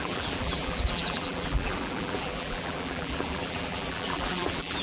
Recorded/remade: remade